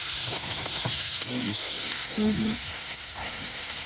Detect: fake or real fake